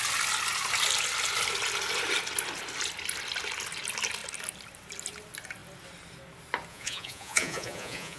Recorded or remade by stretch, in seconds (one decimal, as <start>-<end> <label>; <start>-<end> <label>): 0.0-6.7 recorded; 6.7-8.2 remade